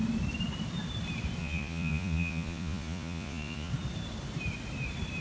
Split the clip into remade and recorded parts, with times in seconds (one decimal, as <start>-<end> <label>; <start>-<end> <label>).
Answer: 0.0-1.4 recorded; 1.4-3.7 remade; 3.7-5.2 recorded